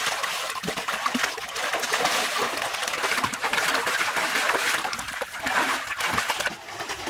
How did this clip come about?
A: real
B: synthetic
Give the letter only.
A